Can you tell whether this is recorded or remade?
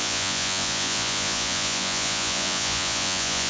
remade